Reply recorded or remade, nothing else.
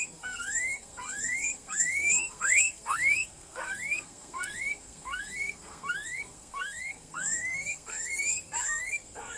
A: remade